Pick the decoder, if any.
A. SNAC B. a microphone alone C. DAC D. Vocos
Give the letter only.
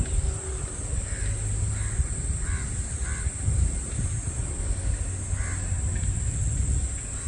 B